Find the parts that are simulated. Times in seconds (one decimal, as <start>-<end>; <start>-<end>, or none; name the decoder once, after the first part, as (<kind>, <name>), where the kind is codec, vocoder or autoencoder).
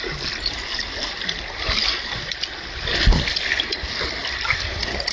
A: none